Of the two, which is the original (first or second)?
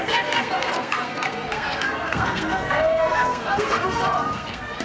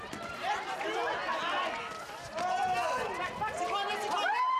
second